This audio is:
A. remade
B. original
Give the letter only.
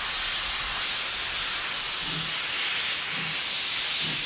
B